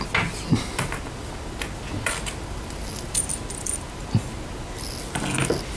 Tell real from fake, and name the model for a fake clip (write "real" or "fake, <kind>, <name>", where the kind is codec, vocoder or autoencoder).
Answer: real